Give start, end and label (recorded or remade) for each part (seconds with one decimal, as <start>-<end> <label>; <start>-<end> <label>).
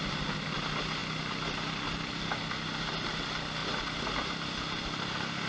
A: 0.0-3.6 recorded; 3.6-5.5 remade